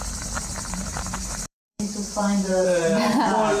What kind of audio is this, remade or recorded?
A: remade